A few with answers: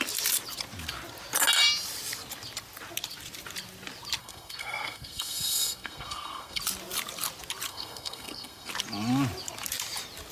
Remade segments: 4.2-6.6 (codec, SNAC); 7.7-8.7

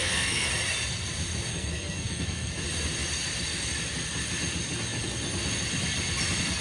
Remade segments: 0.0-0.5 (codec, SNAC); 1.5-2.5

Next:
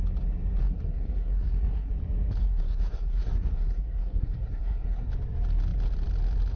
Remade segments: 0.6-1.9 (codec, SNAC); 2.4-5.1

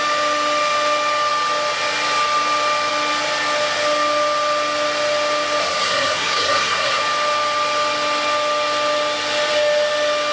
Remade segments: 5.6-7.0 (codec, SNAC)